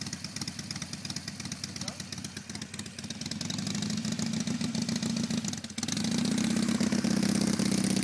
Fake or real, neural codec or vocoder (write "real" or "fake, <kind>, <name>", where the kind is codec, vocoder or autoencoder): real